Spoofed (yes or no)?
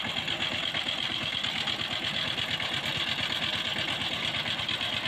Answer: no